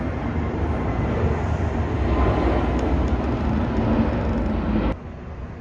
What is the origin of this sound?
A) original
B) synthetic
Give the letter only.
A